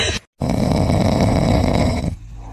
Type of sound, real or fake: real